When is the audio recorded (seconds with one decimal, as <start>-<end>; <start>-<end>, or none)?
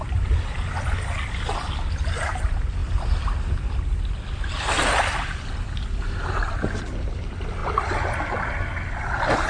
0.0-9.5